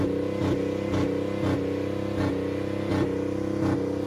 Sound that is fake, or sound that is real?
real